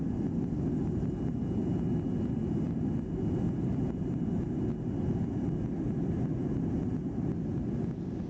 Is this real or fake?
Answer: real